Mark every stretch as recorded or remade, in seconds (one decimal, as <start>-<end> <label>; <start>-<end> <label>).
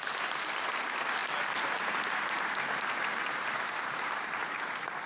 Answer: 0.0-5.1 recorded